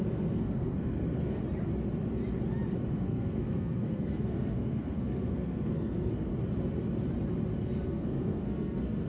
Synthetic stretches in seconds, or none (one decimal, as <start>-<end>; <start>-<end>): 0.0-1.4; 2.9-6.3; 7.6-9.1